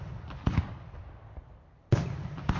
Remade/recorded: recorded